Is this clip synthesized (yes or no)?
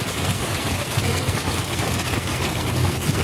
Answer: yes